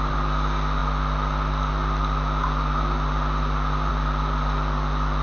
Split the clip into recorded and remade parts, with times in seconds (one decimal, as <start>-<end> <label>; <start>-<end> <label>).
0.0-5.2 recorded